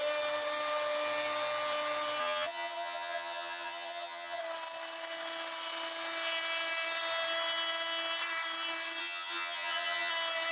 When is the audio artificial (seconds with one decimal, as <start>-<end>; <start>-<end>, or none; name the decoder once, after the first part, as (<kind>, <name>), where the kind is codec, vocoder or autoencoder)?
2.2-4.4 (vocoder, HiFi-GAN); 9.0-10.1